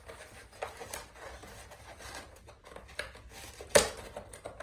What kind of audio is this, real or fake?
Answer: real